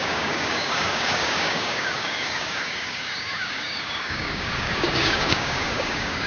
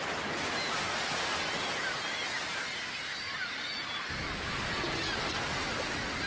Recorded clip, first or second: second